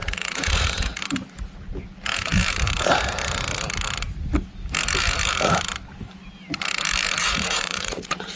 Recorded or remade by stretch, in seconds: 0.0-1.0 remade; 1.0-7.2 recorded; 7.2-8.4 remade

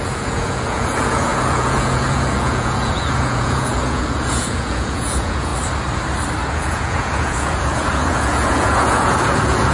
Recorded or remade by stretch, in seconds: 0.0-5.5 remade; 5.5-6.5 recorded; 6.5-9.7 remade

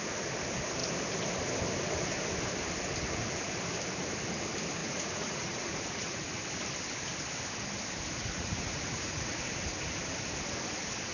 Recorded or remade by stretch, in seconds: 0.0-4.8 recorded; 4.8-6.2 remade; 6.2-8.2 recorded; 8.2-9.3 remade; 9.3-11.1 recorded

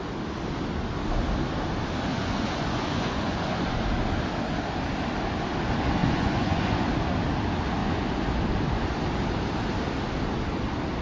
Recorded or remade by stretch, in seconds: 0.0-2.1 recorded; 2.1-3.8 remade; 3.8-6.0 recorded; 6.0-6.9 remade; 6.9-7.8 recorded; 7.8-8.3 remade; 8.3-11.0 recorded